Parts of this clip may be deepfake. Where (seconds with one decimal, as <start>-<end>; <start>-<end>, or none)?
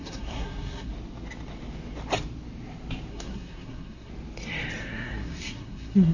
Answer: 0.0-0.9; 3.1-4.1; 4.8-6.1